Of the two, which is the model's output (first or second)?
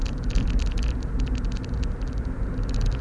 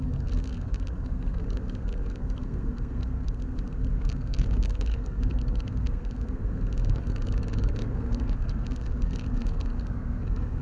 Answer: second